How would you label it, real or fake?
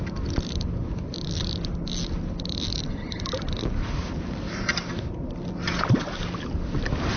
real